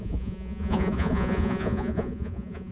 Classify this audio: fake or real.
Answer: fake